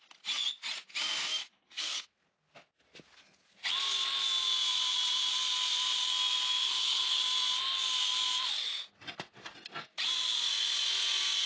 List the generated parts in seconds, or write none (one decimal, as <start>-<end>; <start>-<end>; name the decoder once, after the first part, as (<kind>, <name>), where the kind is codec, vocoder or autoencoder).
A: 1.4-2.0 (codec, HILCodec); 6.6-7.2